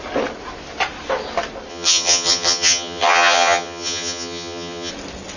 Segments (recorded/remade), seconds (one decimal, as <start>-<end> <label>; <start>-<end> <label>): 0.0-1.7 recorded; 1.7-4.9 remade; 4.9-5.4 recorded